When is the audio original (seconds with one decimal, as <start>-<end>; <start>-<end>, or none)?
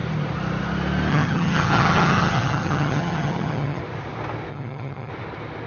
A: 0.0-1.1; 3.8-4.5; 5.1-5.7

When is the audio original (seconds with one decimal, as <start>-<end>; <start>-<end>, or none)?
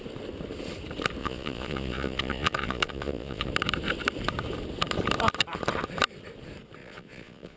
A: 0.0-1.2; 3.5-6.8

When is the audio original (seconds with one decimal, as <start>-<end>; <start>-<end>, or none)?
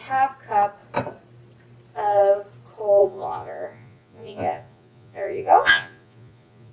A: 0.0-3.0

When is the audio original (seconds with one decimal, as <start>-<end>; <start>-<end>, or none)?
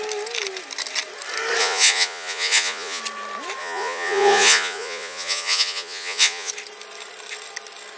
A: 0.0-1.6; 3.0-3.6; 6.5-8.0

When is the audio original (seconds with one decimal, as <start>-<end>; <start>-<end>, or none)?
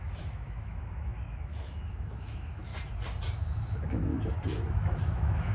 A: 2.7-3.4; 4.1-4.7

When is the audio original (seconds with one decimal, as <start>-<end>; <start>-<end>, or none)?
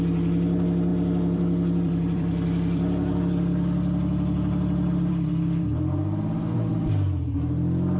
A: 0.0-0.9; 5.3-8.0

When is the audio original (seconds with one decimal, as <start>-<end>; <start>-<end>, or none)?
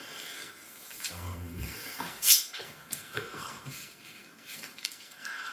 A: none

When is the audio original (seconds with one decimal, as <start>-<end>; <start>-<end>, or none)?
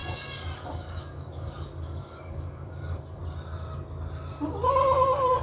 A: 3.2-5.4